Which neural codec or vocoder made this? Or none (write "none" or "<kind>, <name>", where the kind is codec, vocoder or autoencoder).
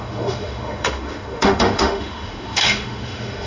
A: autoencoder, DAC-VAE